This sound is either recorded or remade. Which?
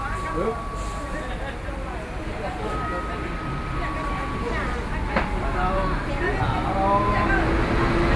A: recorded